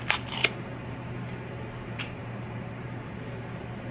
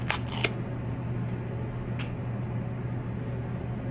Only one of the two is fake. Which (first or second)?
first